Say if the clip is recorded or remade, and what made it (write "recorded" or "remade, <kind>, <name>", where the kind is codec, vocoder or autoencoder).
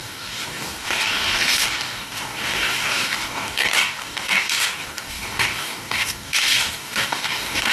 remade, codec, DAC